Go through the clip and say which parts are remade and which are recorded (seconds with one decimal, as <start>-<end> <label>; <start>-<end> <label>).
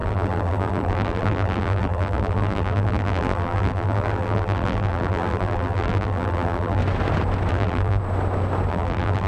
0.0-6.8 remade; 6.8-7.5 recorded; 7.5-8.0 remade; 8.0-8.7 recorded; 8.7-9.3 remade